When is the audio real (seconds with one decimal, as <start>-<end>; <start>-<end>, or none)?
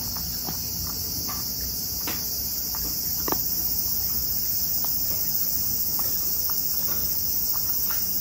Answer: 0.0-1.5; 2.2-2.6; 6.4-8.2